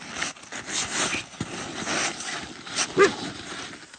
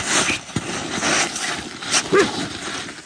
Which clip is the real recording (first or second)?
first